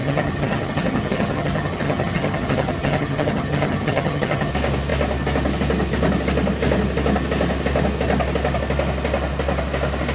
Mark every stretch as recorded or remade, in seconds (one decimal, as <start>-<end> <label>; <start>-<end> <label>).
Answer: 0.0-4.5 remade; 4.5-10.1 recorded